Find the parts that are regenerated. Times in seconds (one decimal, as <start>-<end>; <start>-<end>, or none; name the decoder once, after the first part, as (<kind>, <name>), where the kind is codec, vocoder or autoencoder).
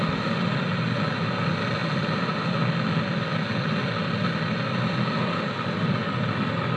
none